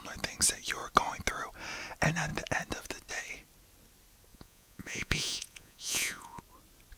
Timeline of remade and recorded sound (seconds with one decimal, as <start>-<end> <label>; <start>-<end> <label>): 0.0-4.3 recorded; 4.3-6.4 remade; 6.4-7.0 recorded